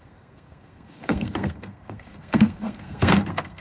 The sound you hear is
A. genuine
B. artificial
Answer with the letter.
B